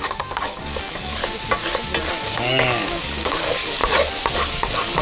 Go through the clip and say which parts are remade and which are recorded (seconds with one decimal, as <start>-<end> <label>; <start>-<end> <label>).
0.0-1.2 remade; 1.2-2.1 recorded; 2.1-3.8 remade; 3.8-4.4 recorded; 4.4-5.0 remade